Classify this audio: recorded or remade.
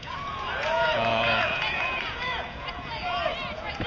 remade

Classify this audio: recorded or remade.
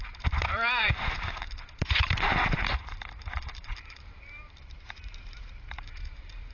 remade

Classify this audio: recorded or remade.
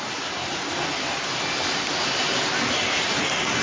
recorded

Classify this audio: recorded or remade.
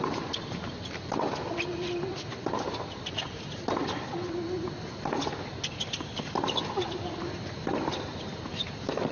recorded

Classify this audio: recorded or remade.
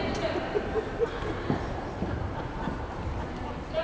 recorded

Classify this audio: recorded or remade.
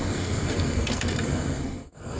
remade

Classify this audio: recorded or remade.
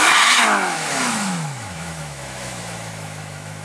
remade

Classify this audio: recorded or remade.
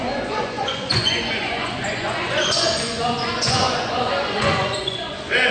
remade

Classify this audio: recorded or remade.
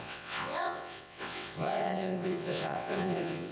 remade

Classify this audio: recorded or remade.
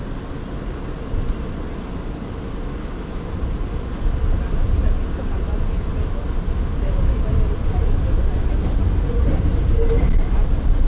recorded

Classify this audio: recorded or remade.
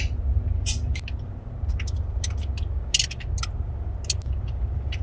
recorded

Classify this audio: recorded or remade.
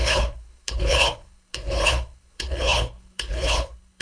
remade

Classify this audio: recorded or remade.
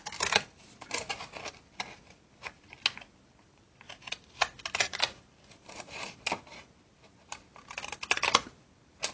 recorded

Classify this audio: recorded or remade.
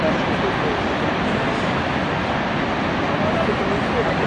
recorded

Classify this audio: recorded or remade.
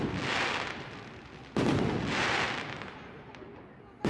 recorded